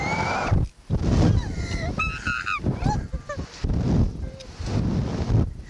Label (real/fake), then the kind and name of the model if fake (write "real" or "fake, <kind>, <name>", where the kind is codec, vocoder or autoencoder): real